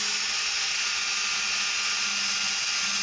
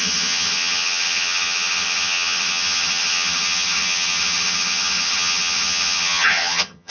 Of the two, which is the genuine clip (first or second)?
first